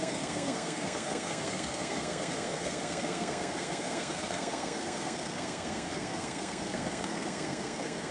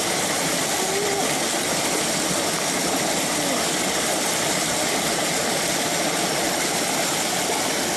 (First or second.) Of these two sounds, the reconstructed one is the first